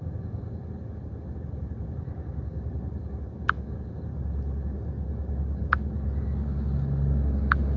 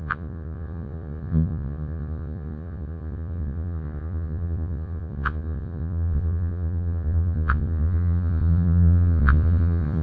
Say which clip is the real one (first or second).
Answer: first